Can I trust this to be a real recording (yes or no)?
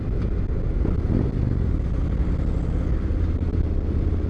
yes